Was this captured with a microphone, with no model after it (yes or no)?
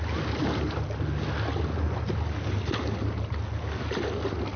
yes